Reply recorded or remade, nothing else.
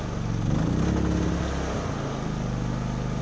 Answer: recorded